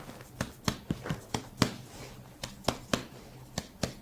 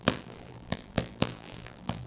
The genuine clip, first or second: first